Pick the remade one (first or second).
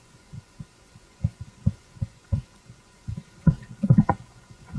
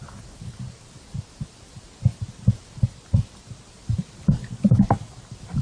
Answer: first